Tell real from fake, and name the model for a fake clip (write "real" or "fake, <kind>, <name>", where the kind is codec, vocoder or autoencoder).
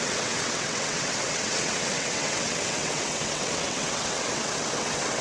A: fake, vocoder, WaveNeXt